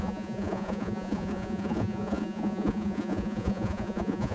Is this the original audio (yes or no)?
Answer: no